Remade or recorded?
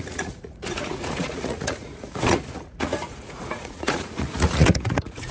remade